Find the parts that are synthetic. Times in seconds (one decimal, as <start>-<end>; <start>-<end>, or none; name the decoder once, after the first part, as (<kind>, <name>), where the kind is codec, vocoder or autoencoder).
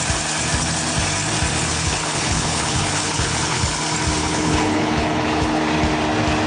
1.6-3.8 (codec, HILCodec); 4.2-5.6